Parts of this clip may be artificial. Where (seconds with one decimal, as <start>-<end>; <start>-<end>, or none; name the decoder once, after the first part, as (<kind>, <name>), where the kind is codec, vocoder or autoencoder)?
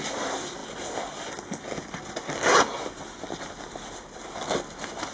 none